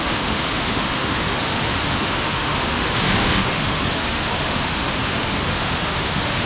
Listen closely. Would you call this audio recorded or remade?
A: remade